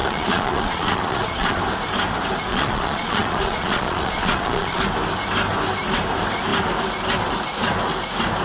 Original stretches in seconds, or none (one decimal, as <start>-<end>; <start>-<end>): 1.6-2.5; 4.8-8.4